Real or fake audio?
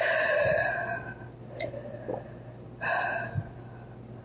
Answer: real